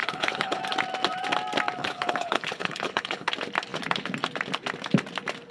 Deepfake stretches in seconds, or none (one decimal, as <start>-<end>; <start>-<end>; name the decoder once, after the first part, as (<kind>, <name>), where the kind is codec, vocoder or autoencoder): 0.0-0.6 (codec, HILCodec); 1.8-3.3

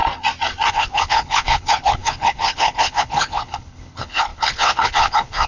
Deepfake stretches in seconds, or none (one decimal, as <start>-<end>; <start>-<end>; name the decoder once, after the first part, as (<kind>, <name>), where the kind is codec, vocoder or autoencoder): 0.7-5.5 (codec, HILCodec)

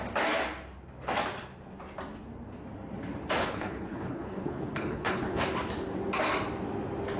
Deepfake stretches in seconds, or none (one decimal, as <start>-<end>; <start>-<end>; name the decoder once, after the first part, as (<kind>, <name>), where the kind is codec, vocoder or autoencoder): 3.4-5.4 (codec, HILCodec)

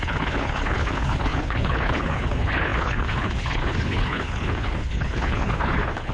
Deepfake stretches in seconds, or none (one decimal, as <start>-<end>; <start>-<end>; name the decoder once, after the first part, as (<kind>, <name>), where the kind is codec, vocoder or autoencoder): 0.0-6.1 (codec, HILCodec)

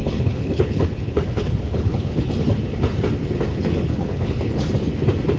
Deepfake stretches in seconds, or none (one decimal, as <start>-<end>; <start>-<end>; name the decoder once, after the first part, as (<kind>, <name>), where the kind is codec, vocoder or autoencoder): 0.0-2.3 (codec, HILCodec); 3.5-4.6

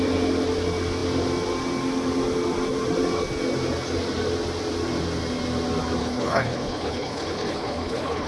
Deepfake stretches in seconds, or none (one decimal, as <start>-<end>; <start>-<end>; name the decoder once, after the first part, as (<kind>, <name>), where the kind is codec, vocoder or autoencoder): 6.0-8.3 (codec, HILCodec)

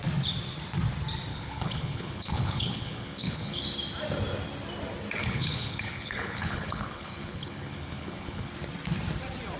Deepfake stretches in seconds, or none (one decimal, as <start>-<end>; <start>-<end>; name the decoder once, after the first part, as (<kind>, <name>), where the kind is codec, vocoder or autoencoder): 1.3-3.6 (codec, HILCodec); 5.2-8.5